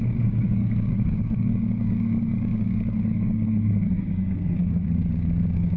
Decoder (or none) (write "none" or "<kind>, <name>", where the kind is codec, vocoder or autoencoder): codec, DAC